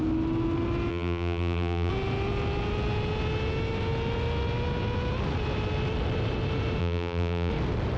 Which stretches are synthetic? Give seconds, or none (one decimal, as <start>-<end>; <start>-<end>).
0.9-1.9; 6.8-7.5